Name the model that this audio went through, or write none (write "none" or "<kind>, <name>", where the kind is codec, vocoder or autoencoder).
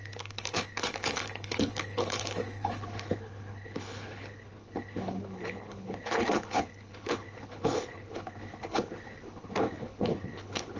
codec, HILCodec